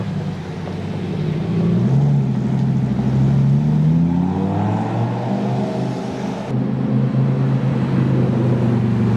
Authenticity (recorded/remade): recorded